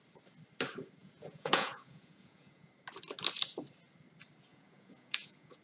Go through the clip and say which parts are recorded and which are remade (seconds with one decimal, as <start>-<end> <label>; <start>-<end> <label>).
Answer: 0.0-1.0 recorded; 1.0-2.7 remade; 2.7-4.5 recorded; 4.5-5.6 remade